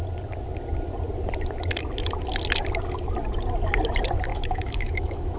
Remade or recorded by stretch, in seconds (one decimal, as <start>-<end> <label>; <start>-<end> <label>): 0.0-4.3 recorded; 4.3-5.4 remade